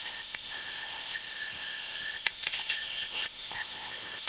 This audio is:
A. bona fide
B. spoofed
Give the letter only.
B